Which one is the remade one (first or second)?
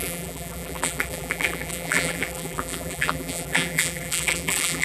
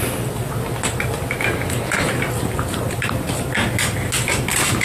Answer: first